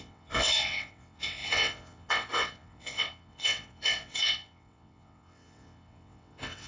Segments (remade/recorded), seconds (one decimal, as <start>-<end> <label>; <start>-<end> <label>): 0.0-6.7 remade

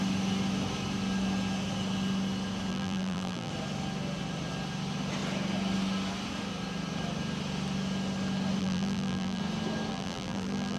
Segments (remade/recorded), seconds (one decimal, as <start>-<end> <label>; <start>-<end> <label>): 0.0-2.7 recorded; 2.7-3.5 remade; 3.5-8.6 recorded; 8.6-9.4 remade; 9.4-9.9 recorded; 9.9-10.8 remade

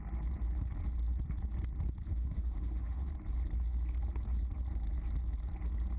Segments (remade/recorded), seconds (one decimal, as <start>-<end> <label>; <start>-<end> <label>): 0.0-2.1 recorded; 2.1-3.1 remade; 3.1-6.0 recorded

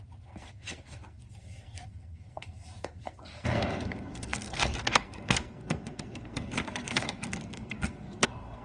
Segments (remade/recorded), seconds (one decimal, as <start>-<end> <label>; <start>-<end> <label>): 0.0-8.6 remade

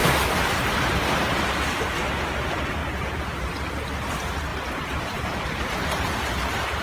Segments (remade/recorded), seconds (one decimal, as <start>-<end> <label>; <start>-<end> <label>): 0.0-2.2 remade; 2.2-2.8 recorded; 2.8-3.7 remade; 3.7-4.5 recorded; 4.5-6.1 remade; 6.1-6.8 recorded

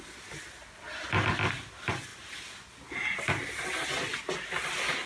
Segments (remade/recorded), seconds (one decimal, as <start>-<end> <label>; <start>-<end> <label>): 0.0-5.1 recorded

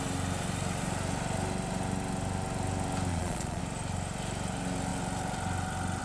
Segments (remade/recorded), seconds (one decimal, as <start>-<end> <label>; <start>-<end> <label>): 0.0-3.1 recorded; 3.1-3.6 remade; 3.6-6.0 recorded